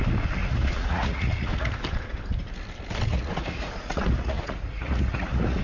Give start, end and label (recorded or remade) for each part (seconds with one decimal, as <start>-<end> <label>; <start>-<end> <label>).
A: 0.0-0.4 recorded; 0.4-1.7 remade; 1.7-3.1 recorded; 3.1-5.6 remade